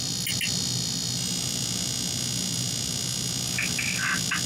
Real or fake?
real